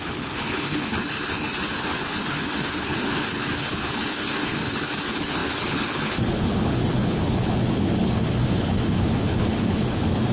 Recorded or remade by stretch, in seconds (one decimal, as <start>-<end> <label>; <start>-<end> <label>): 0.0-10.3 remade